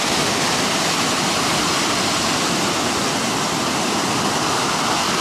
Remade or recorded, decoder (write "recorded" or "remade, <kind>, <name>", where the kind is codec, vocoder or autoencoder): recorded